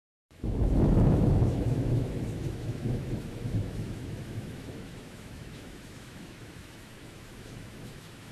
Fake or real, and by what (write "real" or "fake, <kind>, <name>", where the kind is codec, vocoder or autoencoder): fake, autoencoder, DAC-VAE